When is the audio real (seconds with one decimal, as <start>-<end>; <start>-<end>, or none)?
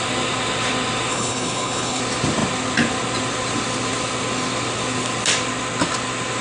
0.0-1.1; 2.0-6.4